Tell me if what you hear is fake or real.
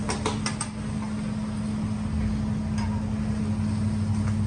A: real